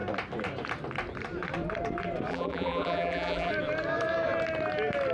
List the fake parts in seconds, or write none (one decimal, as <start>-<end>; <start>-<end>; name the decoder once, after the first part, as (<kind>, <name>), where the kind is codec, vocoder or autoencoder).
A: 2.3-3.5 (vocoder, BigVGAN v2)